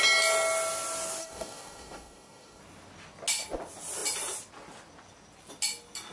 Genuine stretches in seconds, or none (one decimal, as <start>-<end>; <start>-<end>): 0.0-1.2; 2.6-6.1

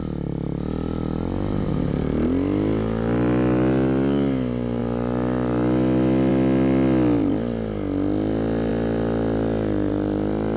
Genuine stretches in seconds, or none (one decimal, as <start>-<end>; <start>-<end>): 0.0-10.6

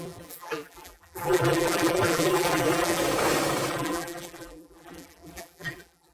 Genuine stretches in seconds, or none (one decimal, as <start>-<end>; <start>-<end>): 3.0-3.7